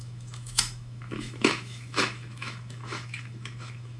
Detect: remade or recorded remade